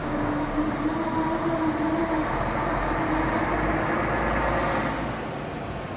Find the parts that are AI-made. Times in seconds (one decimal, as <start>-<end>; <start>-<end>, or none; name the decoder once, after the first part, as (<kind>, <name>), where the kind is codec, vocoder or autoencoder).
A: 0.0-0.7 (codec, DAC)